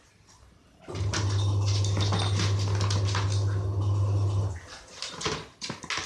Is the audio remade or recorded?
recorded